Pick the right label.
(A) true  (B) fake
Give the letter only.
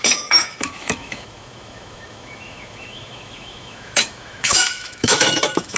B